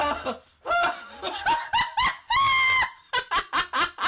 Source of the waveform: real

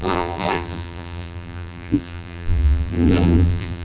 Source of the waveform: fake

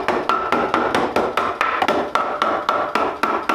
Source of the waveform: real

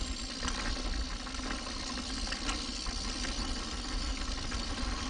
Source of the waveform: real